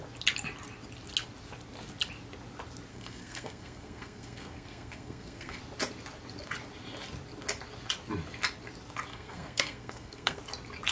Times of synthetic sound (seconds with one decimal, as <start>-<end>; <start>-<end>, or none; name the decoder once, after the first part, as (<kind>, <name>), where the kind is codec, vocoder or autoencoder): 2.9-5.6 (codec, SNAC); 9.1-10.4